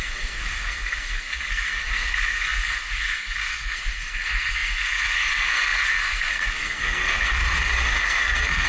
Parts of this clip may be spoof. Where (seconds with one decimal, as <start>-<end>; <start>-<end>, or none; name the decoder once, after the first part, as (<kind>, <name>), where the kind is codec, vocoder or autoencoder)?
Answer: 0.0-7.4 (codec, SNAC); 8.0-8.7

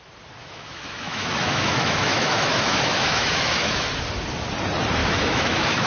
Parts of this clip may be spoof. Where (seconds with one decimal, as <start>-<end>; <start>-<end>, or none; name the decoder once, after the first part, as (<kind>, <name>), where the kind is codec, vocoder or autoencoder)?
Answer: 0.4-3.9 (autoencoder, DAC-VAE); 5.0-5.9

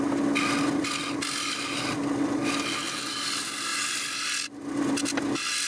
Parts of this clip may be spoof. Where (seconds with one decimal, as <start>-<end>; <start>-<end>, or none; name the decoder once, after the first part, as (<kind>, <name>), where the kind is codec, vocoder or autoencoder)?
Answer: none

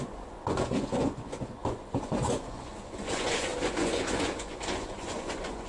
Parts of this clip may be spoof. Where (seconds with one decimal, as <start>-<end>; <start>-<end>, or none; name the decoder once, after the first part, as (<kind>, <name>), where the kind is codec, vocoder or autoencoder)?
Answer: 0.0-5.7 (vocoder, Vocos)